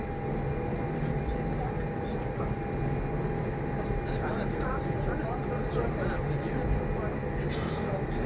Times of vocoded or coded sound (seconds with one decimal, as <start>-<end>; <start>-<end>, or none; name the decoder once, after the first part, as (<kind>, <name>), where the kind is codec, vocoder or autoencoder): none